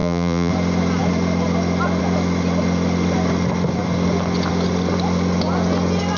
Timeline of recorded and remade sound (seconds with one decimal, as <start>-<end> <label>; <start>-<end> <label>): 0.0-0.5 remade; 0.5-6.2 recorded

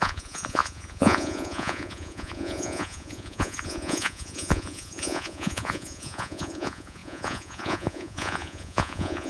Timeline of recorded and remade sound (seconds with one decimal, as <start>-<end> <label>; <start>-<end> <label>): 0.0-9.3 remade

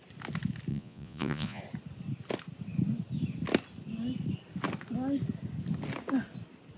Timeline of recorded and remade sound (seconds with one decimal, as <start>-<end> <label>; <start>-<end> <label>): 0.0-0.7 recorded; 0.7-1.6 remade; 1.6-6.8 recorded

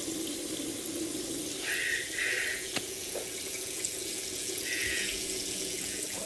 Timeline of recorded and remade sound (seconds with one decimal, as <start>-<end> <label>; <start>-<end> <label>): 0.0-2.5 recorded; 2.5-6.3 remade

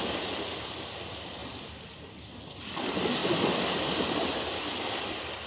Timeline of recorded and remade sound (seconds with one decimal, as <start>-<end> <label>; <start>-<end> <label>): 0.0-5.5 recorded